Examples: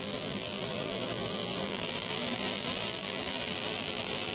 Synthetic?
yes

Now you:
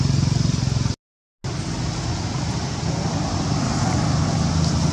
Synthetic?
no